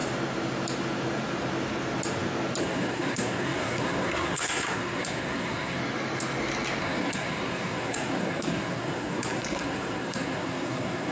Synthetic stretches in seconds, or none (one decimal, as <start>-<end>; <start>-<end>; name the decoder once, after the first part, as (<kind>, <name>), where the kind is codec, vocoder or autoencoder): 2.6-5.8 (codec, SNAC); 6.8-11.1